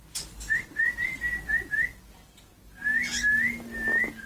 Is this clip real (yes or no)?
yes